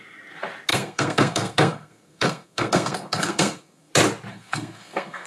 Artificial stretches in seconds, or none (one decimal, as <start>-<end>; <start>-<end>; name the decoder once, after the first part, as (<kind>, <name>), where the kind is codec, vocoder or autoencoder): 0.7-3.9 (codec, SNAC); 4.3-5.3